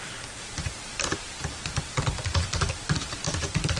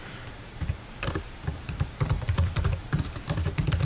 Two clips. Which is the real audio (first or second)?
second